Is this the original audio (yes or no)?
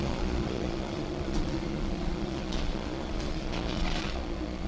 no